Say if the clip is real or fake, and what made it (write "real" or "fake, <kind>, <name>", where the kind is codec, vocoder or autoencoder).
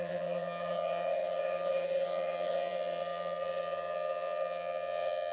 fake, vocoder, HiFi-GAN